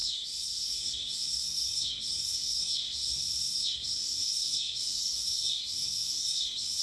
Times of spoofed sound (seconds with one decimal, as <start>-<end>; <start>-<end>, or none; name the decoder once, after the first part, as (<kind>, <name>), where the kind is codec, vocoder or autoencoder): 0.0-6.8 (codec, SNAC)